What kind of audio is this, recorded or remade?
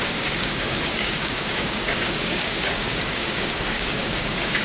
remade